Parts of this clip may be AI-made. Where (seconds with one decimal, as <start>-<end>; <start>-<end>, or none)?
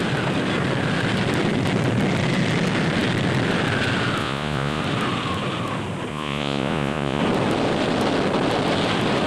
4.2-4.8; 6.1-7.2